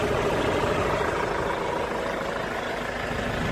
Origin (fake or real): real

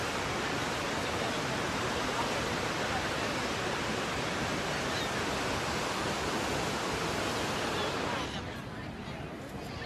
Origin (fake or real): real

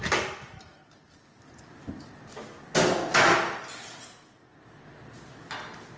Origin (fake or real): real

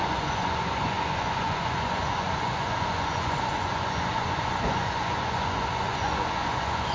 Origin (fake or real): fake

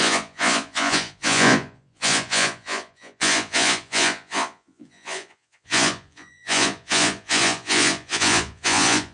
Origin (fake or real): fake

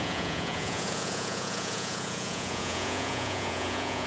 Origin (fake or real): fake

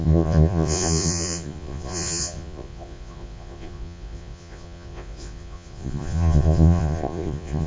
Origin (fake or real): fake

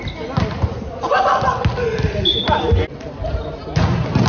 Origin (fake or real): real